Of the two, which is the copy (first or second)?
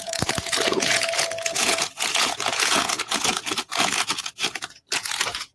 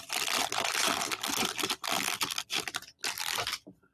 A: first